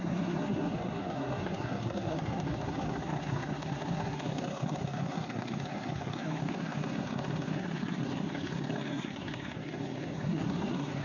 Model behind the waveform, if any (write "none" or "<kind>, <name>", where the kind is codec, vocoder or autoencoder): codec, SNAC